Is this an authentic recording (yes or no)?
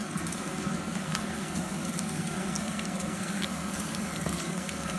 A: no